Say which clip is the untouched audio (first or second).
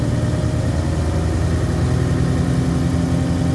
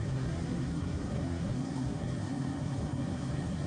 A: first